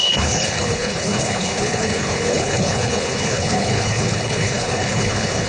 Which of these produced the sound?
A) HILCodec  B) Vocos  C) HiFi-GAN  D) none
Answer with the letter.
A